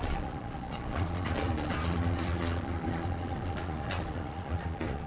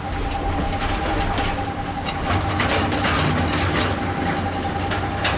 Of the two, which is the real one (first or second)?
second